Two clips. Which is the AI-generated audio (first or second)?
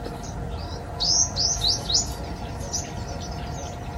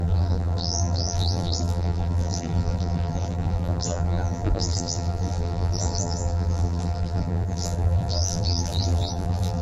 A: second